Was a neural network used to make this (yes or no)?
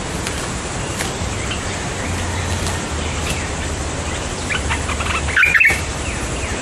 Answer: no